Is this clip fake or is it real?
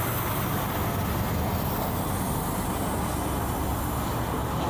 real